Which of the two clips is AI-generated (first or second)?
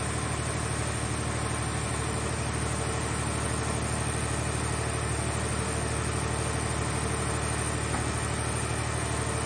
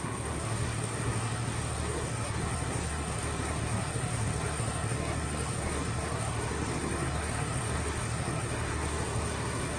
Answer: second